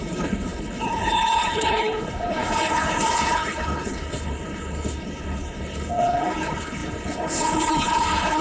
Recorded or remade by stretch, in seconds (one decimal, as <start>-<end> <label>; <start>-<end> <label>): 0.0-8.4 remade